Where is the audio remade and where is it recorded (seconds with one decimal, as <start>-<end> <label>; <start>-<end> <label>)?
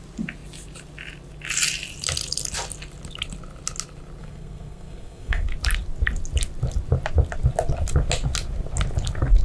0.0-4.2 recorded; 4.2-5.4 remade; 5.4-9.4 recorded